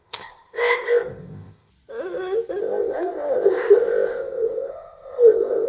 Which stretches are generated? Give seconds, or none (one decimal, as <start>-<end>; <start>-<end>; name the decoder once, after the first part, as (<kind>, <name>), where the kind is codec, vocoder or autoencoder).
0.0-1.7 (codec, ZipCodec); 2.6-5.7